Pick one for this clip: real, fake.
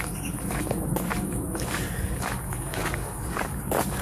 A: fake